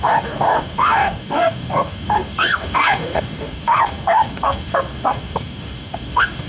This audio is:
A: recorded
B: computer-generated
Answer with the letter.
B